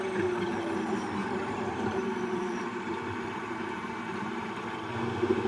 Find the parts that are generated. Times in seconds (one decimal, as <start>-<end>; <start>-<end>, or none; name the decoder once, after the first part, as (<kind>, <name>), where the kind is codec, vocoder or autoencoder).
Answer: 1.2-4.5 (vocoder, BigVGAN v2)